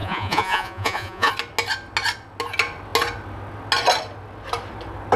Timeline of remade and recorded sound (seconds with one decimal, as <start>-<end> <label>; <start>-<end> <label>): 0.0-1.3 remade; 1.3-5.2 recorded